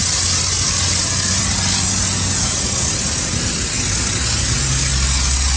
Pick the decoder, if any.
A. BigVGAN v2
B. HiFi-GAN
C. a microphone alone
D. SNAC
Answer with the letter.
C